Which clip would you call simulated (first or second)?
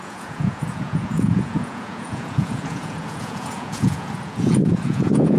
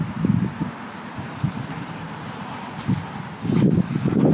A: first